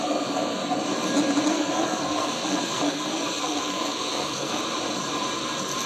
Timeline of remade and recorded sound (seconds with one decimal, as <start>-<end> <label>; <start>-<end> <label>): 0.0-0.6 remade; 0.6-1.5 recorded; 1.5-4.6 remade; 4.6-5.9 recorded